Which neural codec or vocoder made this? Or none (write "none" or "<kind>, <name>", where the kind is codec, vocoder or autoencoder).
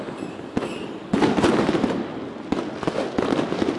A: none